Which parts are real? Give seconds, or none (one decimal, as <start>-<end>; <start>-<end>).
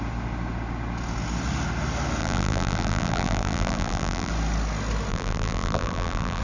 0.0-2.2; 4.3-5.1